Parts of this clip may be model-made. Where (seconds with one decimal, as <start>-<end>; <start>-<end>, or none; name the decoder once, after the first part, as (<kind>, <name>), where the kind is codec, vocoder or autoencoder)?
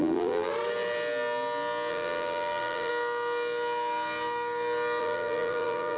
0.0-0.5 (vocoder, BigVGAN v2); 1.9-2.9; 5.0-6.0